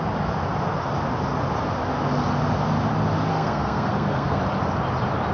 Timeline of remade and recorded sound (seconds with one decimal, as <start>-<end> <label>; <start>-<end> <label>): 0.0-3.3 recorded; 3.3-4.4 remade; 4.4-5.3 recorded